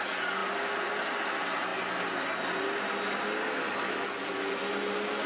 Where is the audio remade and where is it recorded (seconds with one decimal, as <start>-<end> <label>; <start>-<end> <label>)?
0.0-5.3 recorded